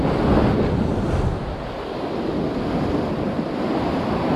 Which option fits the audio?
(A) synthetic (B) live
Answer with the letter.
B